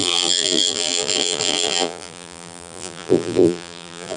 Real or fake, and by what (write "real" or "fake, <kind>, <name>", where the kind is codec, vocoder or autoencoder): fake, vocoder, BigVGAN v2